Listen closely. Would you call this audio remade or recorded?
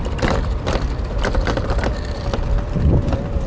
recorded